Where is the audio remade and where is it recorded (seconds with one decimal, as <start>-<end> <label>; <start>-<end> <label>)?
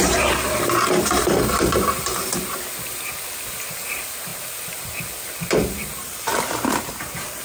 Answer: 0.0-2.1 remade; 2.1-3.8 recorded; 3.8-4.3 remade; 4.3-5.4 recorded; 5.4-6.3 remade; 6.3-7.0 recorded; 7.0-7.4 remade